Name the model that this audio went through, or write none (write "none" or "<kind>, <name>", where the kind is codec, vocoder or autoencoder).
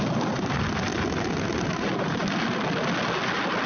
none